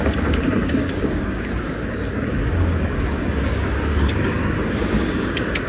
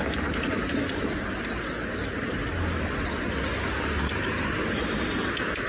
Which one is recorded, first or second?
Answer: second